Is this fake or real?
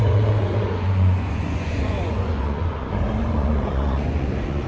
fake